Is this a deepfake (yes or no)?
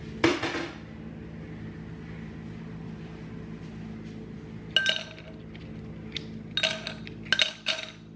no